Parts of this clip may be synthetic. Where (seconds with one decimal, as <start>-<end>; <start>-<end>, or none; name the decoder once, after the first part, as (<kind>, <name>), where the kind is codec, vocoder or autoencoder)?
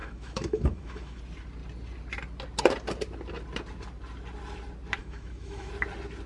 0.0-1.2 (autoencoder, DAC-VAE); 5.0-5.7